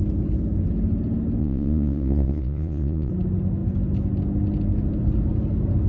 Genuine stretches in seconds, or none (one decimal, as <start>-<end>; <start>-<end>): 0.0-1.4; 3.1-5.9